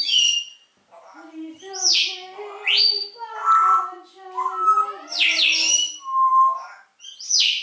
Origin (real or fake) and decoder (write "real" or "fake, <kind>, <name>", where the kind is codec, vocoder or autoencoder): real